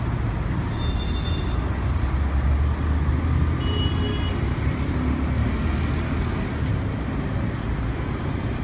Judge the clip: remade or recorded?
recorded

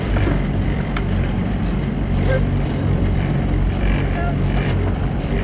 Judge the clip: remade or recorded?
remade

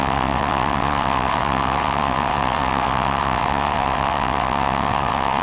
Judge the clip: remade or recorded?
remade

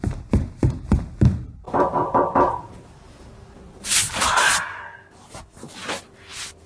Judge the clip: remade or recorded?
recorded